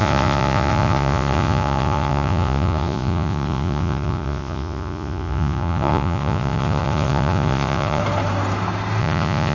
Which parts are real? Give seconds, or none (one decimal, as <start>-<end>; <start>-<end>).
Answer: 8.0-9.0